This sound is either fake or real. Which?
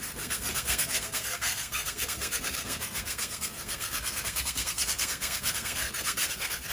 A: fake